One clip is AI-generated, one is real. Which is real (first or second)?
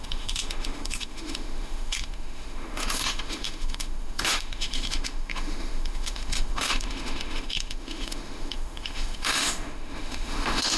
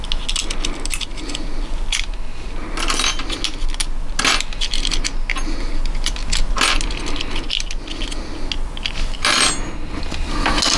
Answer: second